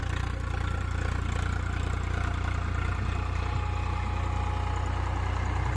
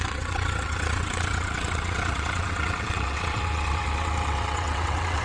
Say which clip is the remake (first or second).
second